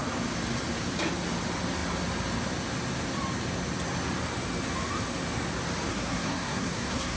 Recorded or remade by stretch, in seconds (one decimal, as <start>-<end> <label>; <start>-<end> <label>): 0.0-5.9 recorded; 5.9-7.2 remade